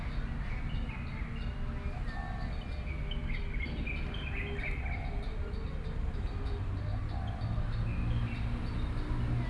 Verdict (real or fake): real